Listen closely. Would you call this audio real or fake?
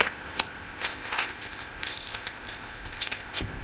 fake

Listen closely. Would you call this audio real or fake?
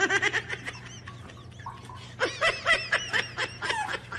real